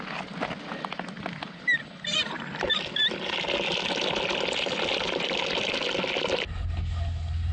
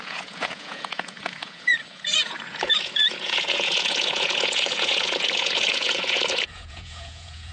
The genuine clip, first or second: first